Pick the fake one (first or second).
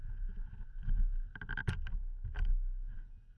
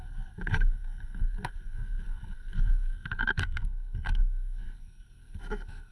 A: second